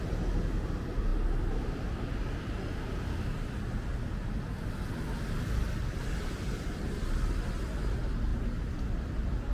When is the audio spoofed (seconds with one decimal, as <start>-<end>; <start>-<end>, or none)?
5.9-6.9; 8.3-9.5